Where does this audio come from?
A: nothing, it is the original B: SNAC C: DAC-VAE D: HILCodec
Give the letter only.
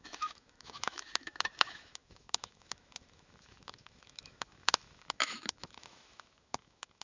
C